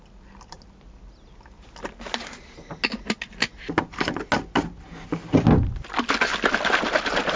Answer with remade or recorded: recorded